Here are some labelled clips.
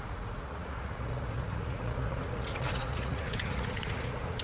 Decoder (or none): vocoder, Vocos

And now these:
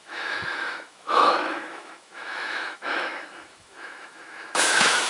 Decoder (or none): autoencoder, DAC-VAE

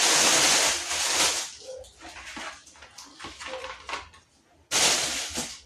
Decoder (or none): none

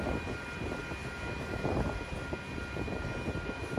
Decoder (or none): none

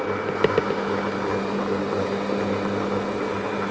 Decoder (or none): none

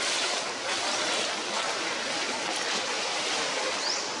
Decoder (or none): none